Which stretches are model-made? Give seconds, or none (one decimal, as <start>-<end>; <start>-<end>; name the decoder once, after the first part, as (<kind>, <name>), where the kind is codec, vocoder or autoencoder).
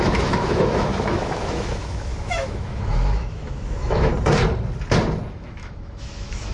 0.0-4.1 (autoencoder, DAC-VAE); 5.3-6.5